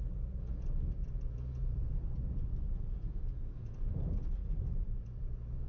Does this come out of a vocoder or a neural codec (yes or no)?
yes